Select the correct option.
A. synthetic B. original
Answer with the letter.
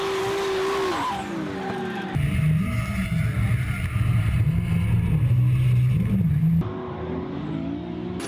B